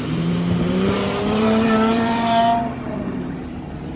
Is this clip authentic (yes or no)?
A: no